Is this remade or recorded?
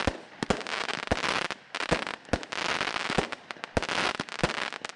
recorded